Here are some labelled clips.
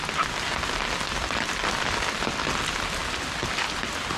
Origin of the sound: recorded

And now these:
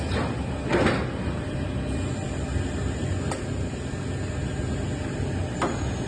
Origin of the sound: recorded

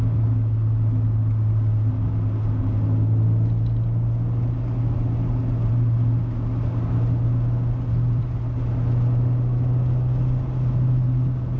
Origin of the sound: recorded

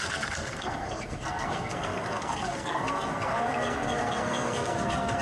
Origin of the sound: remade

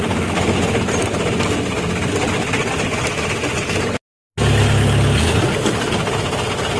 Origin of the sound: recorded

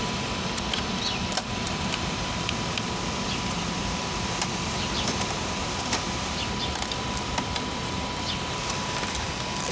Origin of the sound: remade